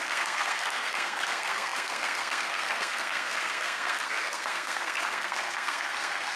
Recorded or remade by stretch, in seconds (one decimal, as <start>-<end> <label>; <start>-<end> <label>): 0.0-6.4 remade